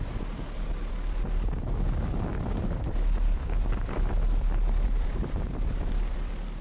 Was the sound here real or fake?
fake